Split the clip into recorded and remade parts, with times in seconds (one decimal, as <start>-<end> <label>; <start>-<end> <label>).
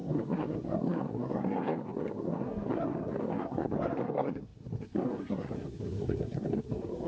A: 0.0-7.1 remade